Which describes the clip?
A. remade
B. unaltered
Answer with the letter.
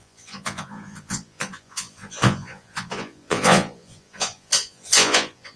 A